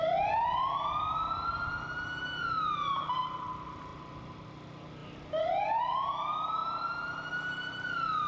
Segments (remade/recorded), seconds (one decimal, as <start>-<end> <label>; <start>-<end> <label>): 0.0-8.3 recorded

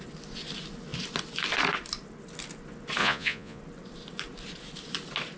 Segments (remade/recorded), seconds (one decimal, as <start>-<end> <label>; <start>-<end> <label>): 0.0-3.0 recorded; 3.0-3.6 remade; 3.6-5.4 recorded

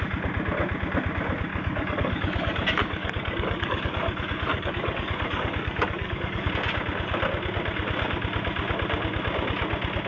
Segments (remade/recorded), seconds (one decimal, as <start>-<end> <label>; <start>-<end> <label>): 0.0-1.5 recorded; 1.5-6.5 remade; 6.5-10.1 recorded

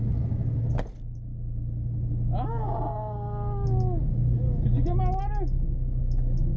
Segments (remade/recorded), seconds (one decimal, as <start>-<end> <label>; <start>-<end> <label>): 0.0-6.6 recorded